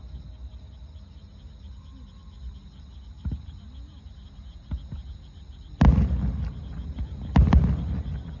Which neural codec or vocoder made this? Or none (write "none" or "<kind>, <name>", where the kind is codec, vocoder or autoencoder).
none